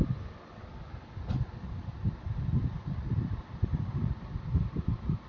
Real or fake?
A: real